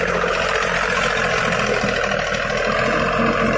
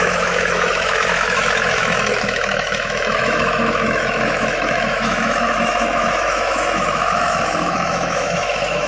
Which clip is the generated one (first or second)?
second